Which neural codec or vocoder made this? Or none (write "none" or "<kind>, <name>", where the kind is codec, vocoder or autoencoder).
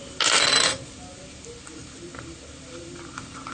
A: none